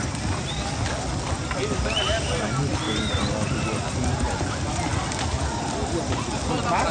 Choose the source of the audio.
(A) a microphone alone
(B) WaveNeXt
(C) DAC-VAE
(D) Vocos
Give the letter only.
A